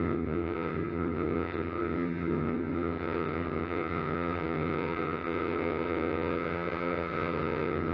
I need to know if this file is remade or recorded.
remade